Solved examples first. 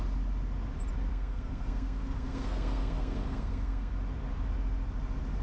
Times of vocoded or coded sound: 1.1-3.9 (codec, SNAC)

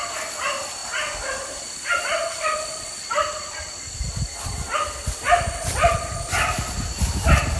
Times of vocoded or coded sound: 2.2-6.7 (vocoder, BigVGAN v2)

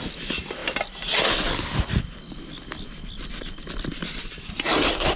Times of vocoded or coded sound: none

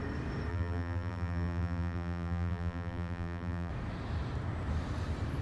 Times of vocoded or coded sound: 0.5-3.7 (vocoder, BigVGAN v2)

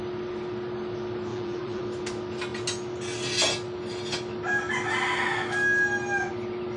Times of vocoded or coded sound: 1.3-1.8 (vocoder, BigVGAN v2)

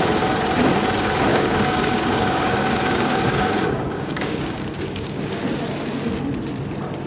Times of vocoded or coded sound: 1.3-5.4 (codec, DAC)

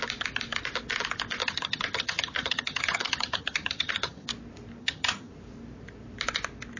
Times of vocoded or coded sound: 1.4-4.3 (vocoder, HiFi-GAN); 4.8-5.3